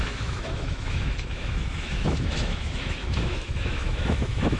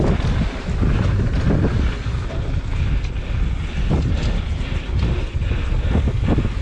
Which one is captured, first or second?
second